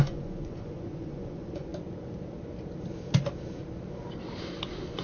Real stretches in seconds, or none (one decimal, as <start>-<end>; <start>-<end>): 1.7-5.0